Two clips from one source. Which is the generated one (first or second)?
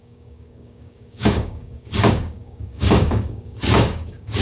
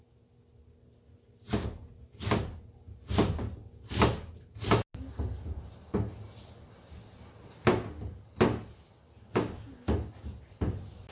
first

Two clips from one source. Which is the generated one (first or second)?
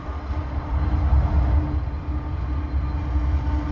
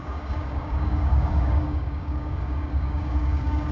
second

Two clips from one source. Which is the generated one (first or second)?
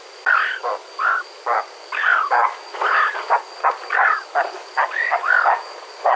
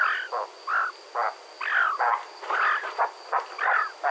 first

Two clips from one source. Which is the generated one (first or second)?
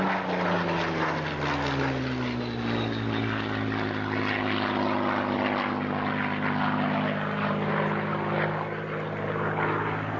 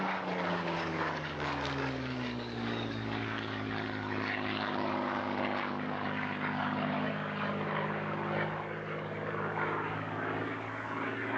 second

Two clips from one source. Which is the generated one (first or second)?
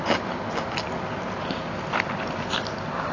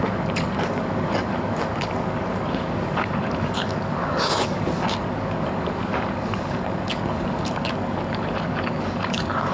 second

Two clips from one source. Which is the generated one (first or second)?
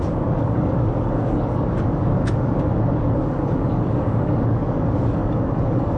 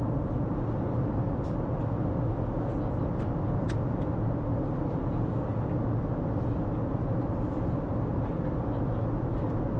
first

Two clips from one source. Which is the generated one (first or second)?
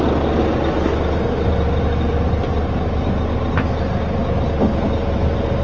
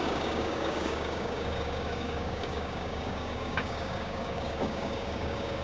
second